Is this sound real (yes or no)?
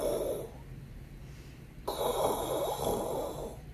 yes